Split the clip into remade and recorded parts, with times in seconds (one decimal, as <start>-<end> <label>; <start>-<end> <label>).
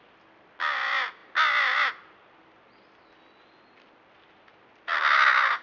0.0-5.6 recorded